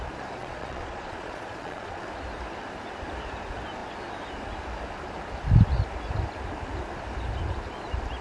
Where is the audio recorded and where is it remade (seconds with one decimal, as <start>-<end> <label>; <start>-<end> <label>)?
0.0-0.4 recorded; 0.4-2.0 remade; 2.0-8.2 recorded